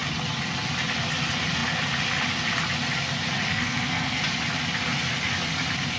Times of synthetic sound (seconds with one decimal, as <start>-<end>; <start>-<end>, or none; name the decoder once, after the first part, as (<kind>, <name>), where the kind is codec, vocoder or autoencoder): 3.5-4.2 (codec, SNAC)